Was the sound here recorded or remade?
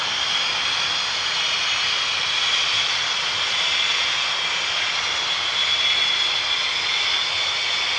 recorded